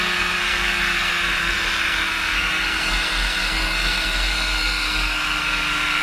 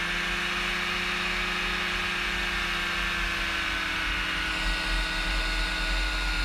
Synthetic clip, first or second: first